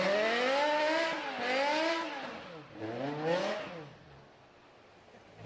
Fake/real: real